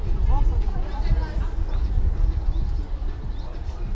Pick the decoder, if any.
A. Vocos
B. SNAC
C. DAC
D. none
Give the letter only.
D